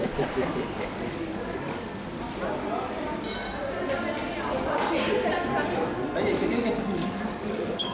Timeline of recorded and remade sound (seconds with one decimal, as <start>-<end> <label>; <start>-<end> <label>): 0.0-1.9 remade; 1.9-6.5 recorded; 6.5-7.9 remade